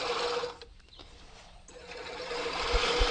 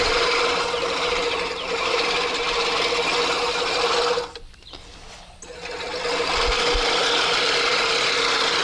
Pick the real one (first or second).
second